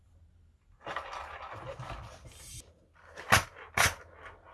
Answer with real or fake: real